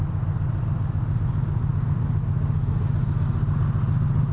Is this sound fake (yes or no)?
no